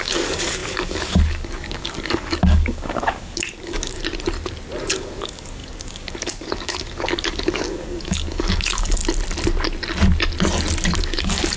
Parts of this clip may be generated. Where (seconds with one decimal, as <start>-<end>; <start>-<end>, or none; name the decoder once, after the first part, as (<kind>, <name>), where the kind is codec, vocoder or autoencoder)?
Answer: 0.0-4.0 (codec, DAC); 4.8-9.0; 11.0-11.6